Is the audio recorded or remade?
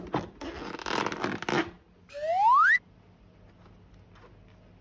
recorded